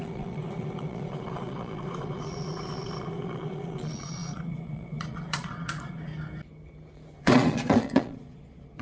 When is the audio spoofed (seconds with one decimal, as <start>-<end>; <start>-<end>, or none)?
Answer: 0.0-6.1; 7.2-8.8